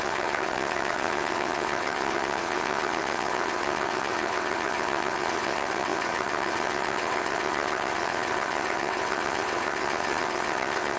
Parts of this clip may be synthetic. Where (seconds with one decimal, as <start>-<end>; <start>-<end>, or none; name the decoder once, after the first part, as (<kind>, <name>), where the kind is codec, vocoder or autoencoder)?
0.0-11.0 (vocoder, WaveNeXt)